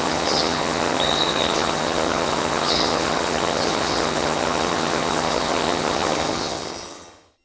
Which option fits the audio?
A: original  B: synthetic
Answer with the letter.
B